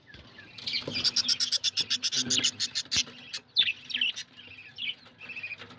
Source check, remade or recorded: recorded